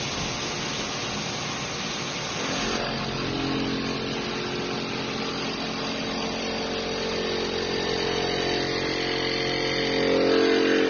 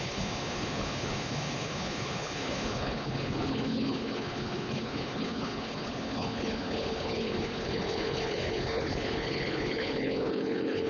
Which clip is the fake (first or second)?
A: second